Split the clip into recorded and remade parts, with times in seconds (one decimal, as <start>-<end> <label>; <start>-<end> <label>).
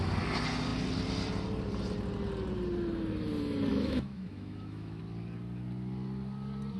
0.0-3.7 recorded; 3.7-5.0 remade; 5.0-6.8 recorded